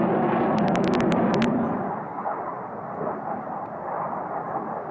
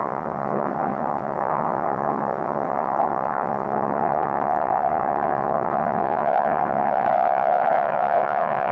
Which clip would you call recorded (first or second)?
first